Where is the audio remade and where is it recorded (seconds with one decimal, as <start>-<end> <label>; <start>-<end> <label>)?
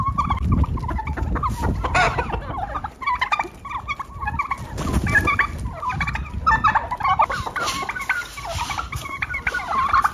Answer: 0.0-8.3 recorded; 8.3-9.4 remade; 9.4-10.1 recorded